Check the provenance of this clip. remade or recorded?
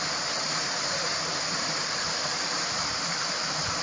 remade